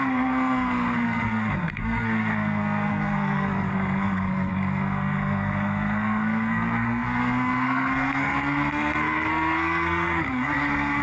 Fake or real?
fake